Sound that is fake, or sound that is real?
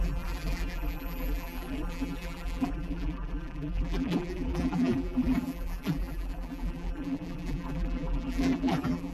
fake